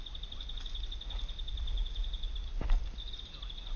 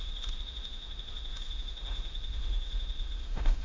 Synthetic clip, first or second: second